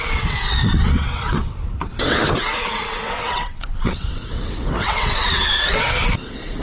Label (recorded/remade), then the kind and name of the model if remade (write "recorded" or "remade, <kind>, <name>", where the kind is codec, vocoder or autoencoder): remade, vocoder, WaveNeXt